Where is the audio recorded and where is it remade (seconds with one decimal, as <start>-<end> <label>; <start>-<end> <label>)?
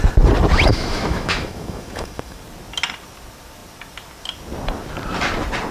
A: 0.0-0.7 recorded; 0.7-2.4 remade; 2.4-5.7 recorded